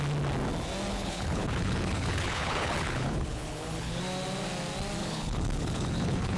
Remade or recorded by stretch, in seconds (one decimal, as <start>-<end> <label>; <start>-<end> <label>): 0.0-0.9 recorded; 0.9-4.0 remade; 4.0-5.0 recorded; 5.0-6.4 remade